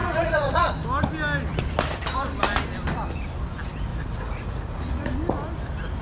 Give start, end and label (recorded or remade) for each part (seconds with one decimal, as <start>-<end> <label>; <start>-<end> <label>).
0.0-0.7 remade; 0.7-3.9 recorded; 3.9-5.1 remade; 5.1-6.0 recorded